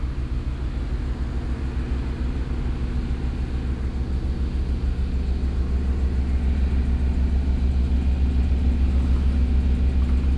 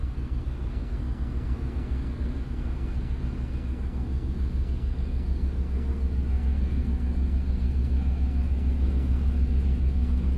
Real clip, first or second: first